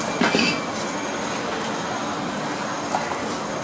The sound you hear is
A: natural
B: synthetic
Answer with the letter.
A